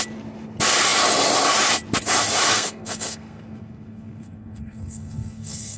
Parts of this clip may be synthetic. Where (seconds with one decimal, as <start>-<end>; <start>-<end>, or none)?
2.5-5.8